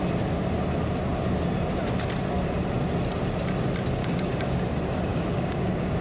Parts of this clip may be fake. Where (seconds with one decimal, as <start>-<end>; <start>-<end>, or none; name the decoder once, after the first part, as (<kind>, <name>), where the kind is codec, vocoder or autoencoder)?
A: 4.0-4.6 (codec, DAC); 5.1-6.0